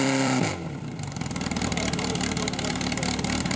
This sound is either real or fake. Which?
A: fake